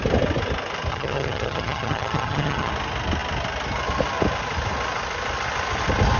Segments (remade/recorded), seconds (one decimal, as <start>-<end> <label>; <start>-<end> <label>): 0.0-0.9 recorded; 0.9-2.7 remade; 2.7-6.2 recorded